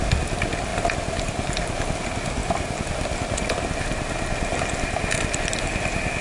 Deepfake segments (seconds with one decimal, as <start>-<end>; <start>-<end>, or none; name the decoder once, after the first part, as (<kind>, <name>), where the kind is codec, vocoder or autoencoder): none

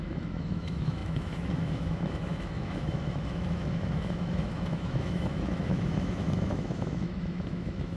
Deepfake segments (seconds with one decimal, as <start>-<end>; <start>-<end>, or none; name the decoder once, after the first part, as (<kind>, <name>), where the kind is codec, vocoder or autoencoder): 0.0-8.0 (autoencoder, DAC-VAE)

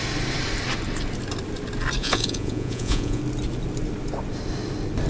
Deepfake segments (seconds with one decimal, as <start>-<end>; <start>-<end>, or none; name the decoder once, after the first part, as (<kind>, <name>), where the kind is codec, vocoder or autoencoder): 2.0-3.2 (vocoder, Vocos)

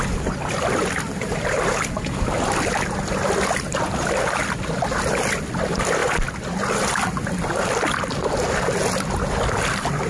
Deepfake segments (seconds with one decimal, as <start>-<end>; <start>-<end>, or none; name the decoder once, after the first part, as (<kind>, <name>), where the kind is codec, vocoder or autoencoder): none

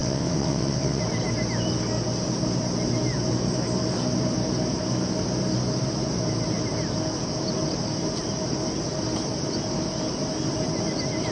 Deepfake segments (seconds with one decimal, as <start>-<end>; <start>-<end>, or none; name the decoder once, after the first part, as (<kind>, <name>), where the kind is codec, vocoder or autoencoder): 0.0-1.0 (vocoder, WaveNeXt)

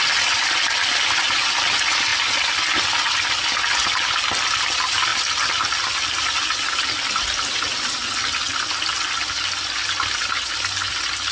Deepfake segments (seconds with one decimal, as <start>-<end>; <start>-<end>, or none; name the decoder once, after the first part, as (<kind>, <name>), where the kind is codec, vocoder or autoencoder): none